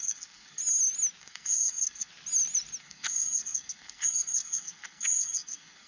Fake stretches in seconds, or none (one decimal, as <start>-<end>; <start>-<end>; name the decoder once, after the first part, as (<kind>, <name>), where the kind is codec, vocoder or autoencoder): 0.0-0.6 (codec, SNAC); 1.2-2.1; 2.8-5.9